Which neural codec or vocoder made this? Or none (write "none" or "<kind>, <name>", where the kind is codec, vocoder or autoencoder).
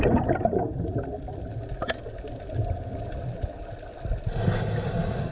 none